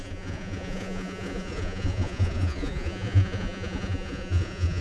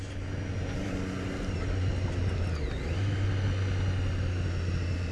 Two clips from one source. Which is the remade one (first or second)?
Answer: first